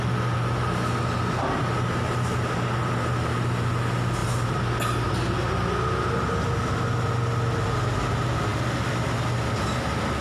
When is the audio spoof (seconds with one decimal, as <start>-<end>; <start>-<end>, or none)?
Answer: 4.2-5.1